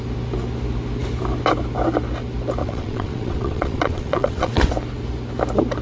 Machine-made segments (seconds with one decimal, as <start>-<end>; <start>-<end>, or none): 2.6-4.7